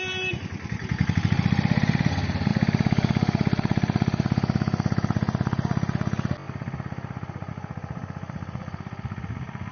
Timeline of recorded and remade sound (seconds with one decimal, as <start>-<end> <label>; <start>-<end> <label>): 0.0-9.7 recorded